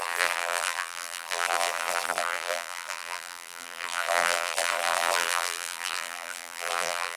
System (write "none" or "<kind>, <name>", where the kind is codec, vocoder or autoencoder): vocoder, BigVGAN v2